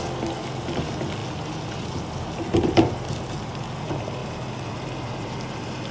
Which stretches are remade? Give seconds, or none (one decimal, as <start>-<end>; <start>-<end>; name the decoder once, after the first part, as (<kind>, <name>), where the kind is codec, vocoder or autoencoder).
none